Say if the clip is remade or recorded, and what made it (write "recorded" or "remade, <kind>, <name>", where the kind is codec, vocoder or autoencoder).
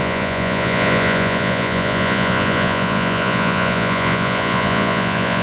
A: remade, vocoder, Vocos